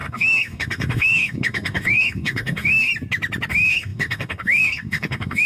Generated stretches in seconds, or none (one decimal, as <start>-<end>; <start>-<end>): 0.0-2.9; 3.5-5.5